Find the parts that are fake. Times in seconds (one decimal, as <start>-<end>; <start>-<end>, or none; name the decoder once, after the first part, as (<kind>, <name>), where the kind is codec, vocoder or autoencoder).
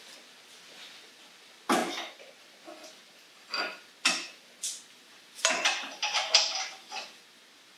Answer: none